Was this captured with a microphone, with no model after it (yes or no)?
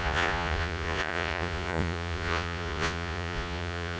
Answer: no